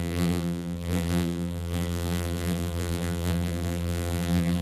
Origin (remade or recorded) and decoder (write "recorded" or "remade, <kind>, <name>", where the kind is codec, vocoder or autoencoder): remade, vocoder, BigVGAN v2